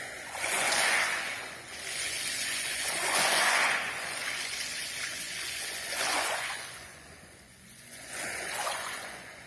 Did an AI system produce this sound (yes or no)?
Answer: yes